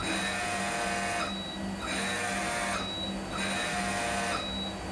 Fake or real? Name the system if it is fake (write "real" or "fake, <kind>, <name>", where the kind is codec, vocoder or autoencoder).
real